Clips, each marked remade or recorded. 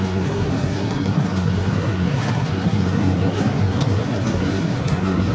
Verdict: remade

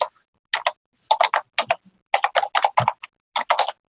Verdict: recorded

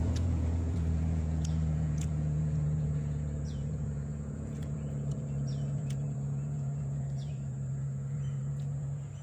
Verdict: remade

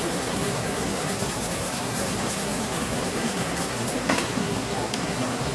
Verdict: remade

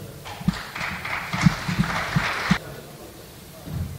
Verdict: remade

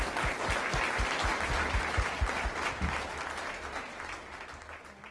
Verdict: recorded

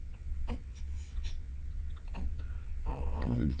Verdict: remade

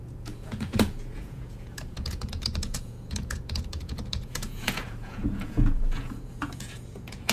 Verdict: remade